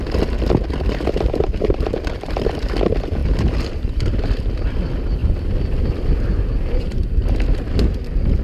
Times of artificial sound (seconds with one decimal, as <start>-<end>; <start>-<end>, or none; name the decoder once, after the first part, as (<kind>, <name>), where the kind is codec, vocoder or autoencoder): 3.2-4.4 (vocoder, BigVGAN v2); 5.2-6.2